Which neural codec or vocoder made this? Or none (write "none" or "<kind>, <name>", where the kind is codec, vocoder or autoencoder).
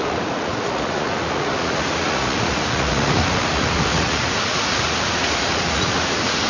vocoder, Vocos